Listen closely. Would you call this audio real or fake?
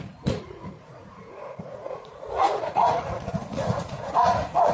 fake